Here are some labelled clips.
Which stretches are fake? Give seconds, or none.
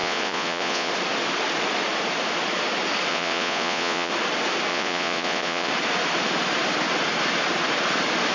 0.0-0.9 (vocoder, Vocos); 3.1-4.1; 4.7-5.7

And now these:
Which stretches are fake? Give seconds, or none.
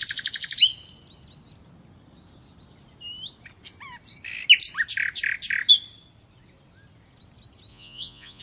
7.7-8.4 (vocoder, Vocos)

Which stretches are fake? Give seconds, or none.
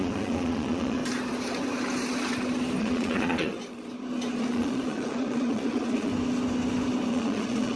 0.0-1.0 (vocoder, Vocos); 2.8-3.6; 4.4-6.1; 7.1-7.8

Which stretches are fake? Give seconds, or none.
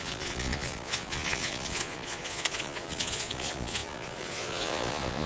0.0-5.3 (vocoder, Vocos)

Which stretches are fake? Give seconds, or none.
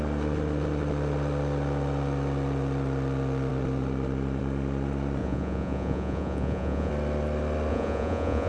5.2-6.9 (vocoder, Vocos); 7.7-8.5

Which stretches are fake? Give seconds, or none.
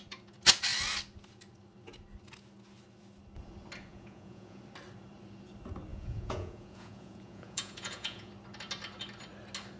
3.9-4.6 (vocoder, Vocos); 5.9-8.3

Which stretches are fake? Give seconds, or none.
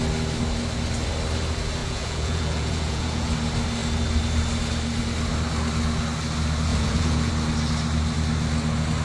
1.8-3.3 (vocoder, Vocos); 6.7-7.3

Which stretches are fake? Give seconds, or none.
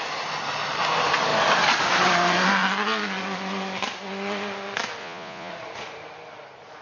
5.0-5.5 (vocoder, Vocos)